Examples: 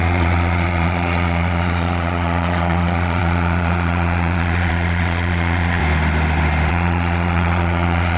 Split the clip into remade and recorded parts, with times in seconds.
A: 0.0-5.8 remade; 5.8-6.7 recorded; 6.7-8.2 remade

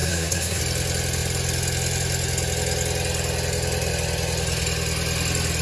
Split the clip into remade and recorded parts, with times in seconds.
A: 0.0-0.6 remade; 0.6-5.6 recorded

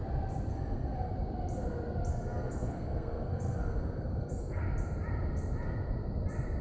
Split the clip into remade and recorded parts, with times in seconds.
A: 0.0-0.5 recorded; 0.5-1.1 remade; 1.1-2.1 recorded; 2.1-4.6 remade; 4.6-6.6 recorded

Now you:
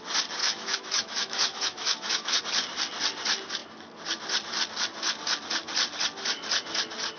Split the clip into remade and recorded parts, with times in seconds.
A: 0.0-0.4 recorded; 0.4-2.4 remade; 2.4-7.2 recorded